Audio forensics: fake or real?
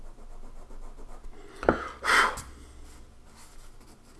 real